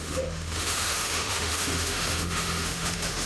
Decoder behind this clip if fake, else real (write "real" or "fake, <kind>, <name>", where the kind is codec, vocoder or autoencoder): fake, autoencoder, DAC-VAE